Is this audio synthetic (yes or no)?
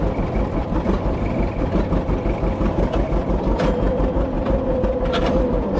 no